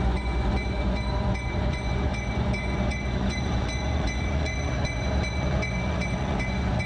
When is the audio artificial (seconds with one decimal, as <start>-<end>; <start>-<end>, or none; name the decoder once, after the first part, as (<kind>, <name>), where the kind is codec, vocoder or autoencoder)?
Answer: 0.0-6.9 (vocoder, Vocos)